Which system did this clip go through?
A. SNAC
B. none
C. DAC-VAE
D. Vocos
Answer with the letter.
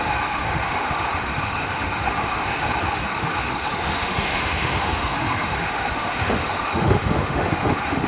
C